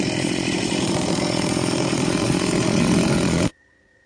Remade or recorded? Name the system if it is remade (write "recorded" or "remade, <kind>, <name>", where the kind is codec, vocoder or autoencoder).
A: remade, vocoder, Vocos